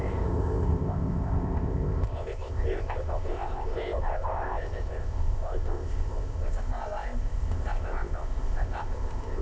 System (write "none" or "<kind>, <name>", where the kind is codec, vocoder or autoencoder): codec, ZipCodec